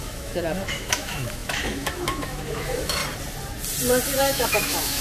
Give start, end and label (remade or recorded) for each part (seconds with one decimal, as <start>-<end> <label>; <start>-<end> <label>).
0.0-3.0 remade; 3.0-4.2 recorded; 4.2-5.0 remade